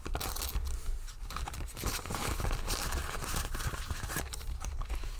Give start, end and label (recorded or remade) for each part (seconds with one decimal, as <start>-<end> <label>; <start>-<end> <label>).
0.0-0.8 recorded; 0.8-1.8 remade; 1.8-3.2 recorded; 3.2-4.7 remade; 4.7-5.2 recorded